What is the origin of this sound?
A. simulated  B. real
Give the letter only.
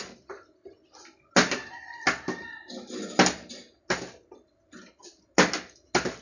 B